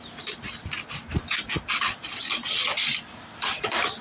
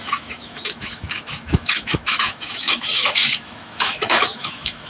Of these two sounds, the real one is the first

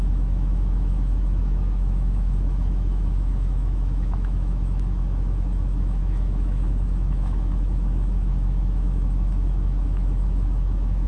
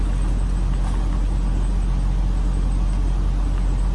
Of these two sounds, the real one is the second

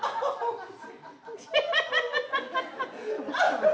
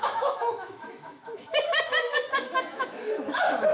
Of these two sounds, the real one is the first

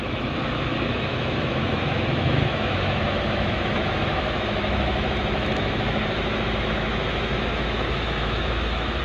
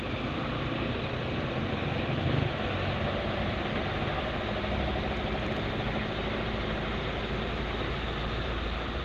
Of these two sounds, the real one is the second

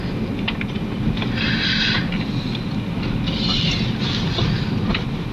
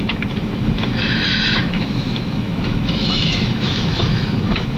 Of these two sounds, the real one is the first